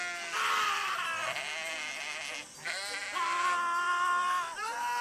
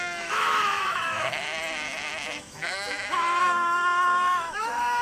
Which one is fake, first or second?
second